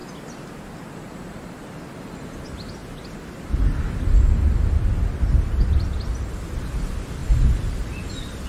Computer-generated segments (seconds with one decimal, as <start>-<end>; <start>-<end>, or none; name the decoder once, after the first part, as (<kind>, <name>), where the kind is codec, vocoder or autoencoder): none